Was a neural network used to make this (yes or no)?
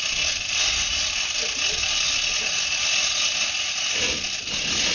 no